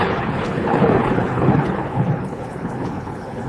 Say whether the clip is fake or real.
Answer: fake